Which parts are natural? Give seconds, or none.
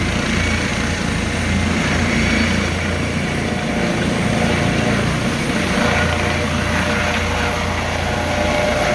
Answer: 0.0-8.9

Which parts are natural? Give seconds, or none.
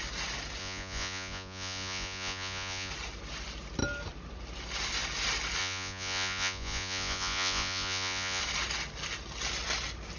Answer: 0.0-0.6; 2.9-5.6; 8.4-10.2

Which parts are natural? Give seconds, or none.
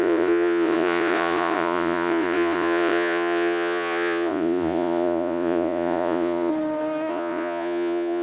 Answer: 6.5-7.1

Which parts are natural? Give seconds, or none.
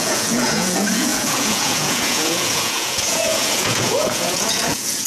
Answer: none